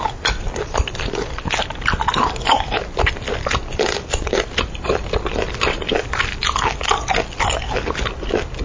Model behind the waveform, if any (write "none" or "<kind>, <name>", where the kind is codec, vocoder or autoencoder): none